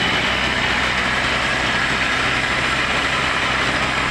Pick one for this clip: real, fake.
real